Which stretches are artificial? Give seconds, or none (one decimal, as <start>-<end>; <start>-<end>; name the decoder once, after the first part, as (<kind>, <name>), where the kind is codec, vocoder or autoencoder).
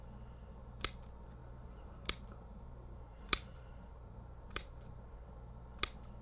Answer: 1.4-5.1 (vocoder, BigVGAN v2)